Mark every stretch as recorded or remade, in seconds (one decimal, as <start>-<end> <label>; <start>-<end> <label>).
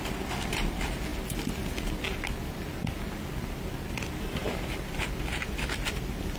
0.0-6.4 recorded